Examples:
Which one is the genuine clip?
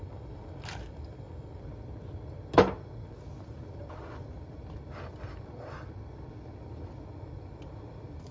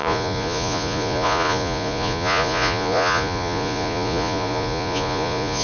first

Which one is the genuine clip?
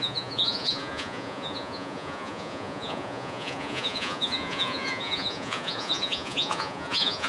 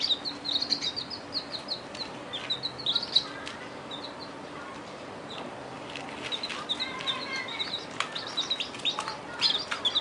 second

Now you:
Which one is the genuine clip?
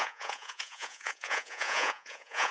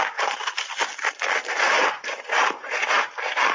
second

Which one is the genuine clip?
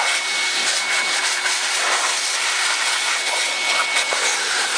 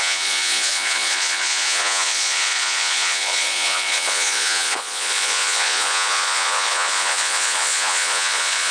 first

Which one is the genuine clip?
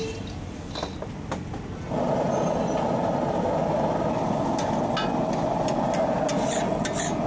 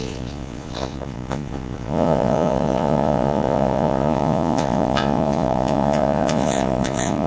first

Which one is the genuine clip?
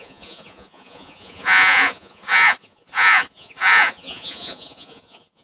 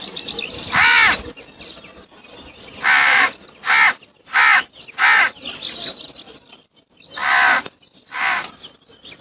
second